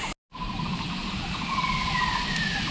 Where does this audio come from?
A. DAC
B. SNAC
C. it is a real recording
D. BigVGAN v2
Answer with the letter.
C